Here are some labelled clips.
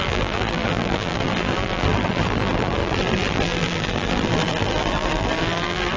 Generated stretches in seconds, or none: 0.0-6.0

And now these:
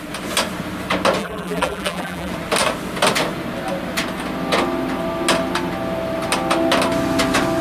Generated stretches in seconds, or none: 1.2-2.3

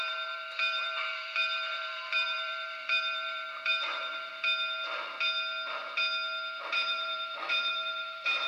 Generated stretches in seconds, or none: 0.0-4.3; 6.7-8.5

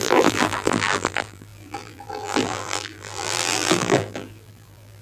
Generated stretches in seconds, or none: 0.0-5.0